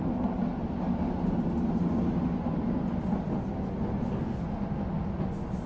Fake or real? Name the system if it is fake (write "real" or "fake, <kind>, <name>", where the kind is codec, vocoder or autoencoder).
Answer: real